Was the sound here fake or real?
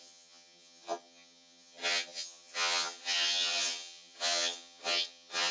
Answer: fake